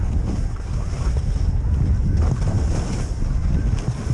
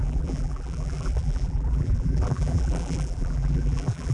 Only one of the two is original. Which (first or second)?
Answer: first